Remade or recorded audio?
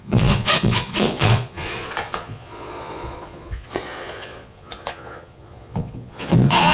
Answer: remade